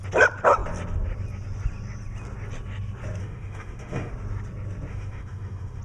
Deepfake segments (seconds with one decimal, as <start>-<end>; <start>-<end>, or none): 3.2-4.1; 4.9-5.8